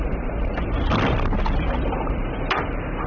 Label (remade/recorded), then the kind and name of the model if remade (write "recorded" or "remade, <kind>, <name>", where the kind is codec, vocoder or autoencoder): recorded